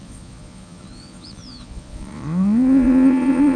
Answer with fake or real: fake